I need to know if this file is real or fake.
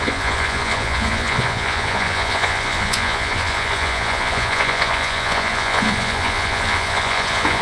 fake